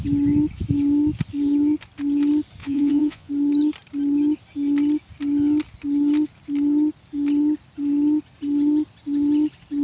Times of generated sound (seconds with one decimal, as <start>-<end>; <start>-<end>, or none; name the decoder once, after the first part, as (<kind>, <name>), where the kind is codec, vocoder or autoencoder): 2.6-3.3 (vocoder, Vocos)